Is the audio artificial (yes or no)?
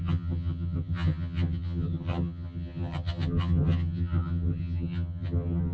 yes